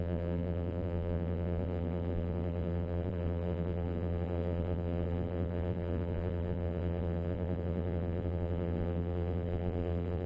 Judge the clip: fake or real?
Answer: fake